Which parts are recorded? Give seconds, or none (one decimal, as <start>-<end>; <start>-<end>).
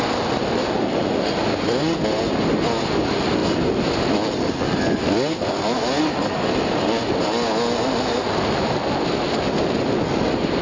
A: 0.0-10.6